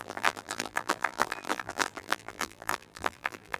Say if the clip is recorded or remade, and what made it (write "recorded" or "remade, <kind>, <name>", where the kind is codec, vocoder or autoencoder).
remade, vocoder, BigVGAN v2